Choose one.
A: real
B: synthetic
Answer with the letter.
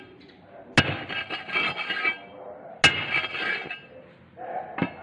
A